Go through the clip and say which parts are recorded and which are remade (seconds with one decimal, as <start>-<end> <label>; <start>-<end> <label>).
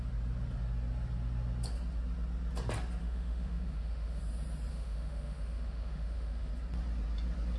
0.0-3.0 recorded; 3.0-4.2 remade; 4.2-4.7 recorded; 4.7-6.5 remade; 6.5-7.6 recorded